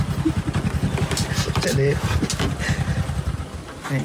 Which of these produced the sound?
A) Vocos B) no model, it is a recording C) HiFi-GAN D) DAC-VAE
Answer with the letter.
B